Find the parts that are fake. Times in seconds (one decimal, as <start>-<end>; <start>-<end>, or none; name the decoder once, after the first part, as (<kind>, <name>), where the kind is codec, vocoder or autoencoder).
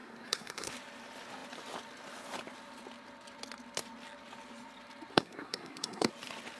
0.0-0.7 (codec, SNAC); 5.1-6.1